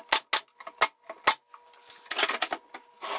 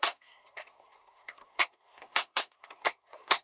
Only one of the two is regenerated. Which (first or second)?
second